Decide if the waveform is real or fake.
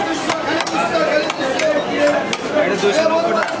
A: real